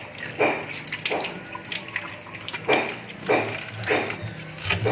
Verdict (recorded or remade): recorded